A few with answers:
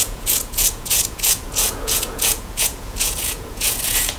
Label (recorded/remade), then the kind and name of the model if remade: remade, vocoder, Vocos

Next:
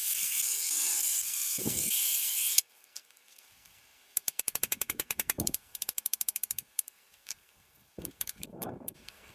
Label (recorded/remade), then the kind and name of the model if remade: remade, codec, SNAC